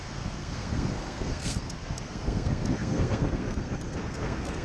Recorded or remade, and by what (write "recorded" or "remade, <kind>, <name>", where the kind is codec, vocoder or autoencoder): remade, codec, SNAC